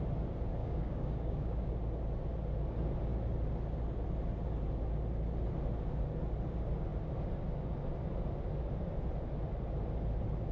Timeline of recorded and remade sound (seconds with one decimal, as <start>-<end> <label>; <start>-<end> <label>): 0.0-0.6 recorded; 0.6-1.7 remade; 1.7-10.5 recorded